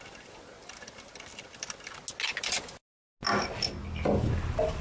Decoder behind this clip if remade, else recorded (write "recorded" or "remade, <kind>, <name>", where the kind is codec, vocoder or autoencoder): recorded